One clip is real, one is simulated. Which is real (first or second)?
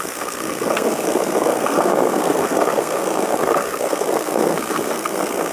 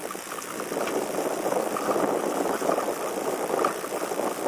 second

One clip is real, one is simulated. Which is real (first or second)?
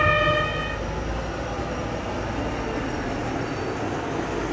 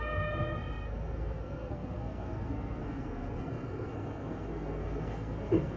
first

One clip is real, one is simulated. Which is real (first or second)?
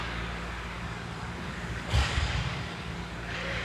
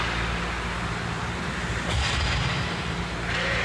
second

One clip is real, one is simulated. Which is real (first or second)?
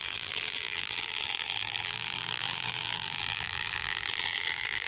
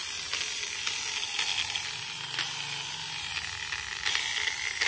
second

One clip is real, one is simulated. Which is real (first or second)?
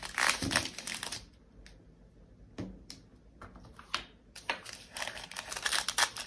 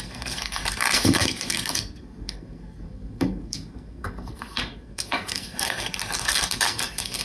first